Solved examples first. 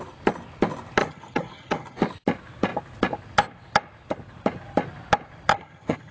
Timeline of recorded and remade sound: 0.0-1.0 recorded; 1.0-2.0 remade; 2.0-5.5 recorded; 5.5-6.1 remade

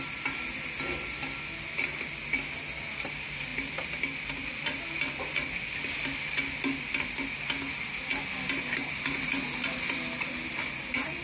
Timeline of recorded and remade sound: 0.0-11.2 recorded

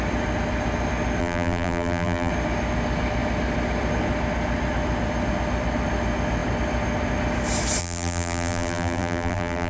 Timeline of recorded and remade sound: 0.0-1.2 recorded; 1.2-2.3 remade; 2.3-7.8 recorded; 7.8-9.7 remade